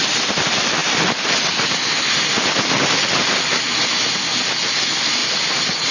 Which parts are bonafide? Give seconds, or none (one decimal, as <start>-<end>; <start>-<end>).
0.0-5.9